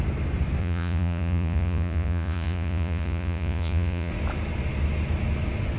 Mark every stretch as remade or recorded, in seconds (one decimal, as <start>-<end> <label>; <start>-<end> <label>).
0.0-0.6 recorded; 0.6-4.1 remade; 4.1-5.8 recorded